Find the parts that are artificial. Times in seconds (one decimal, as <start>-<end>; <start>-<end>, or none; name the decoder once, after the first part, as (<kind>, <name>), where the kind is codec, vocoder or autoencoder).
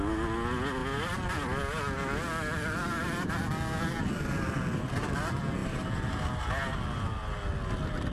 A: none